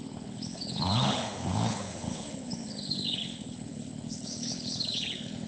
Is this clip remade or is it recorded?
remade